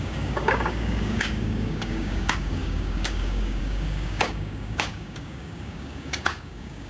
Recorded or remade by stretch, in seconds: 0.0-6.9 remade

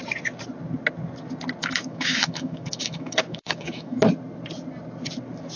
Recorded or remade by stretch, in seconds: 0.0-1.6 recorded; 1.6-4.0 remade; 4.0-5.6 recorded

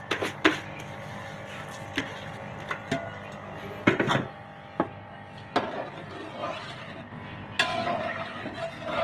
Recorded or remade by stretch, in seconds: 0.0-9.0 recorded

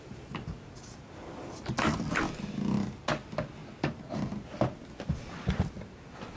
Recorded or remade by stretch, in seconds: 0.0-6.4 recorded